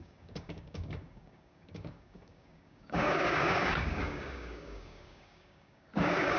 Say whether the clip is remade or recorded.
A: remade